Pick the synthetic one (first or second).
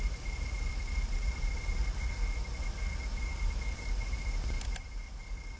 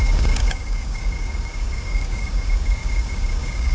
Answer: second